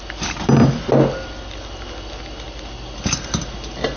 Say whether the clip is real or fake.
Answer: real